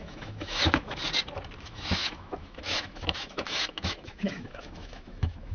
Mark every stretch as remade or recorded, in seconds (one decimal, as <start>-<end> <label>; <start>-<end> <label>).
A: 0.0-1.0 remade; 1.0-1.6 recorded; 1.6-5.5 remade

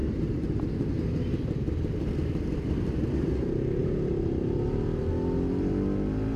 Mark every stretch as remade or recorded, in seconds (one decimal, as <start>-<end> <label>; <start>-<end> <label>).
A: 0.0-3.3 remade; 3.3-3.8 recorded; 3.8-5.1 remade; 5.1-6.4 recorded